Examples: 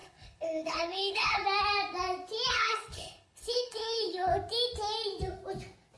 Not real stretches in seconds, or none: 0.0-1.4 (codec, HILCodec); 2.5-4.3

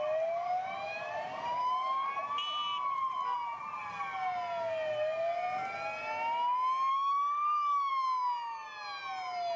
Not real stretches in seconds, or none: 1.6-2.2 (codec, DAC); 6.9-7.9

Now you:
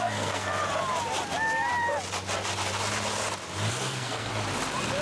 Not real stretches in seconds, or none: 0.0-0.7 (codec, SNAC); 3.7-4.3

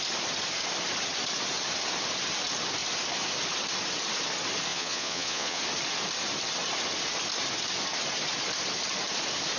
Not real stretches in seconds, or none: 4.7-5.6 (vocoder, Vocos)

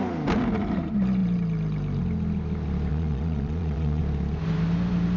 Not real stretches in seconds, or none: 2.9-4.0 (vocoder, Vocos)